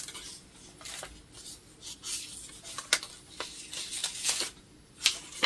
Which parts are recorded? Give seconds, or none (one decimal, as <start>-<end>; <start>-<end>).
0.0-5.5